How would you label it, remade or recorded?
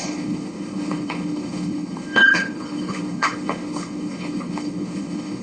remade